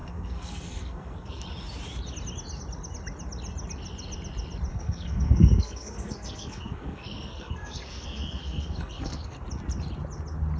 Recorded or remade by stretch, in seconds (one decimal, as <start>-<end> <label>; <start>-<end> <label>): 0.0-1.4 remade; 1.4-4.7 recorded; 4.7-9.4 remade; 9.4-10.6 recorded